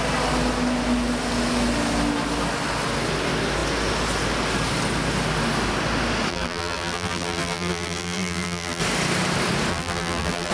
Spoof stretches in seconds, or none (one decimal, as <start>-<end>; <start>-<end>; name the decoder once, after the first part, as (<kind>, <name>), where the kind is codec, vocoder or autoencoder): 6.3-8.8 (vocoder, BigVGAN v2); 9.7-10.5